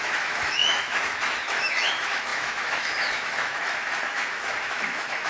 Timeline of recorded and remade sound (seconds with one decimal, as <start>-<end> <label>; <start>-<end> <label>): 0.0-5.3 remade